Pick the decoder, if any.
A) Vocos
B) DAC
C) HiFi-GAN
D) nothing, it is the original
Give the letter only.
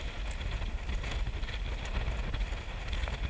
D